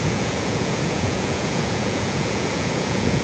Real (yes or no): no